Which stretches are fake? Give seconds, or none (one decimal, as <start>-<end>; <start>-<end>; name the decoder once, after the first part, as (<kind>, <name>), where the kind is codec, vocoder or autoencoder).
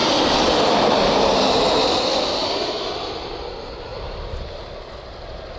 none